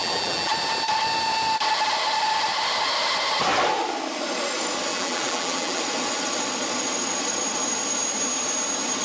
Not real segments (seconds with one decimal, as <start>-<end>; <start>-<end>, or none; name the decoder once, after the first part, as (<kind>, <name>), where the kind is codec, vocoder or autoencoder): 0.0-0.5 (vocoder, BigVGAN v2); 4.9-5.8

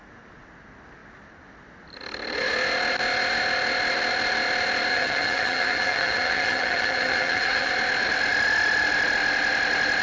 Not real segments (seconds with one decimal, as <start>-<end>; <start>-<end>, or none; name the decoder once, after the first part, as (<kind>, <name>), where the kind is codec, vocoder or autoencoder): 4.9-7.7 (vocoder, HiFi-GAN)

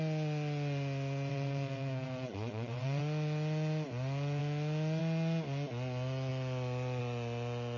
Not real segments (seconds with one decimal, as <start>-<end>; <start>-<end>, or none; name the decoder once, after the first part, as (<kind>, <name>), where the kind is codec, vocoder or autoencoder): 1.3-3.0 (vocoder, WaveNeXt)

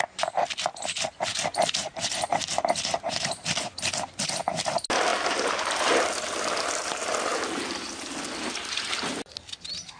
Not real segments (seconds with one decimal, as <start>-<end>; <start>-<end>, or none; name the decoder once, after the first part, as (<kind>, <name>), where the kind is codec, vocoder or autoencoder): 1.3-2.3 (vocoder, BigVGAN v2); 7.3-8.1

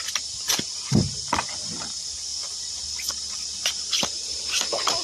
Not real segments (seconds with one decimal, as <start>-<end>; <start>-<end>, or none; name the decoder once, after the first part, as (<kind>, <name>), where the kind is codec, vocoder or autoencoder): none

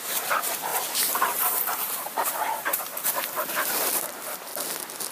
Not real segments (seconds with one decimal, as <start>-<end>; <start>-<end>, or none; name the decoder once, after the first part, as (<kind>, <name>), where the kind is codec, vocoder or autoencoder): 0.0-0.7 (vocoder, BigVGAN v2); 1.2-2.9; 3.5-4.5